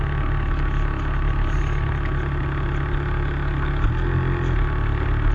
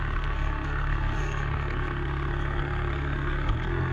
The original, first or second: first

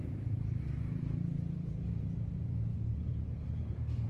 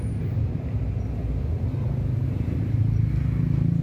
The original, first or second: second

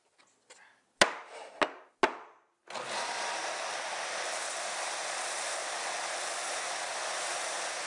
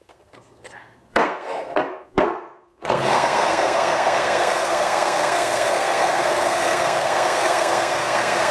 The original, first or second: first